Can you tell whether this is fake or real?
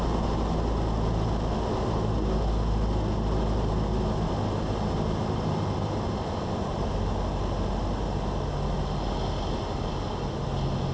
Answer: real